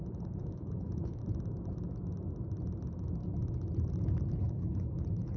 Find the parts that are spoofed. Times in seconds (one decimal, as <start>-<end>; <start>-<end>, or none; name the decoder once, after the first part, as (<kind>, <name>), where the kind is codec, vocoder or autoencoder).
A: 0.0-1.2 (codec, HILCodec); 4.4-5.4